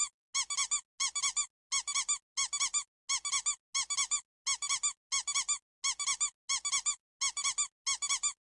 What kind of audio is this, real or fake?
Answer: real